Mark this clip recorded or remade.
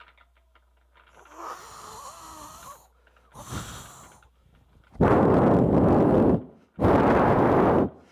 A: recorded